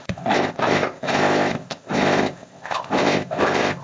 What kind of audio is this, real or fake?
fake